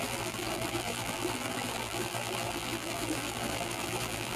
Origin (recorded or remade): remade